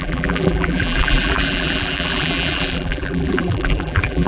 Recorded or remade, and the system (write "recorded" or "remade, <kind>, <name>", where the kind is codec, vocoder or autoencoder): remade, vocoder, BigVGAN v2